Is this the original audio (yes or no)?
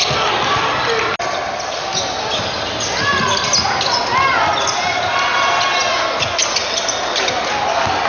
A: yes